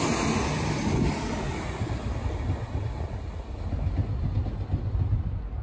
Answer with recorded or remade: recorded